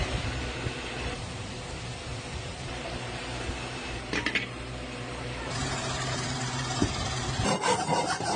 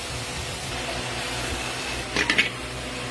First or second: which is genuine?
second